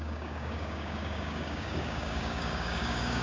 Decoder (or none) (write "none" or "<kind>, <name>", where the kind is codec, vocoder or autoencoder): codec, DAC